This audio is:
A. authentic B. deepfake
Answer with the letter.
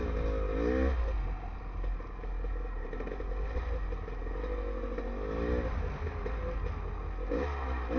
A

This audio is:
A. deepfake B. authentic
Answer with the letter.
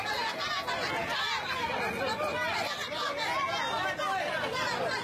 B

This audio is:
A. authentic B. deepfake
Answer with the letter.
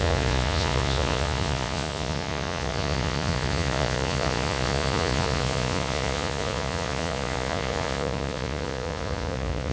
B